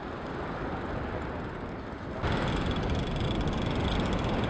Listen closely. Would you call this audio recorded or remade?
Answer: recorded